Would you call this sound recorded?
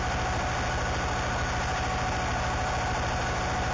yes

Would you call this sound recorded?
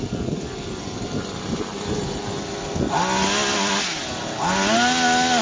yes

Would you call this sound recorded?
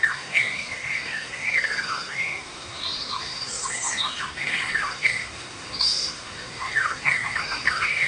no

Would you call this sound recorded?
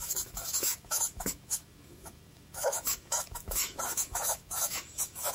no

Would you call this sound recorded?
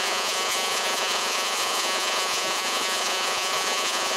no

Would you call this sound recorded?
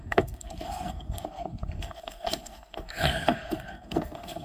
no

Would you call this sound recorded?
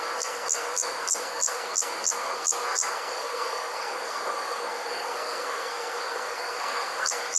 no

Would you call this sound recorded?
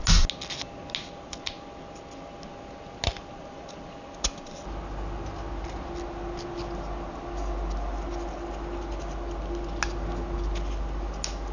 yes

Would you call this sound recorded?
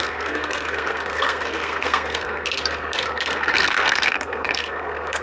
no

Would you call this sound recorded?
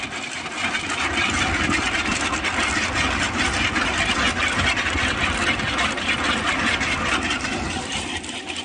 yes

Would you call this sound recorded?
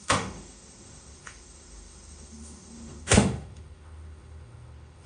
no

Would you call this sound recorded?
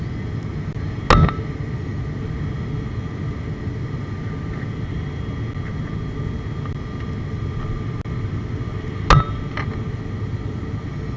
yes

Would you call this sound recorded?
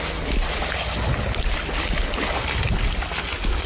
yes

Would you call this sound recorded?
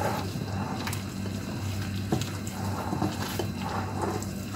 yes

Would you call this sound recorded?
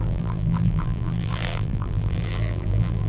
no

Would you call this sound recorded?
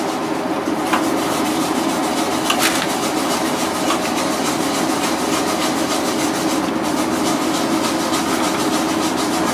yes